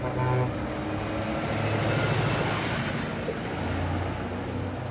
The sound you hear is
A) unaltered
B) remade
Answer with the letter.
A